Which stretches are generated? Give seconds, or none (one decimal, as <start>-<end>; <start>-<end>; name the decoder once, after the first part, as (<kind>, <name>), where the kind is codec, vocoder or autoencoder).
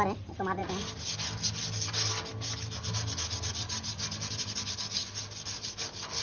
none